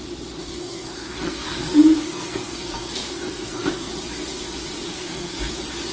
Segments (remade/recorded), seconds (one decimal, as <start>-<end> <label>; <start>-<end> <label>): 0.0-0.4 recorded; 0.4-3.9 remade; 3.9-4.9 recorded; 4.9-5.5 remade; 5.5-5.9 recorded